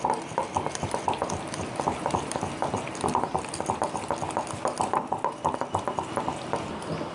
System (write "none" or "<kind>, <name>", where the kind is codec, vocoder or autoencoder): none